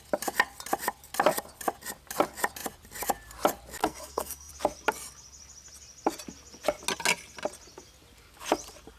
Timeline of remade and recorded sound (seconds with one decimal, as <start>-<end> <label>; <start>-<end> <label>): 0.0-3.8 recorded; 3.8-4.5 remade; 4.5-9.0 recorded